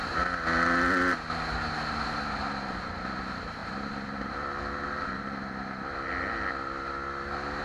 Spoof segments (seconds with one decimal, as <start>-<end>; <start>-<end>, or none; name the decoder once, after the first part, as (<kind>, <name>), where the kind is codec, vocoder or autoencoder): none